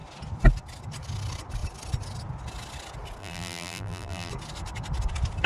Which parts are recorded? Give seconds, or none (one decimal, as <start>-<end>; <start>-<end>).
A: 0.0-3.2; 4.3-5.5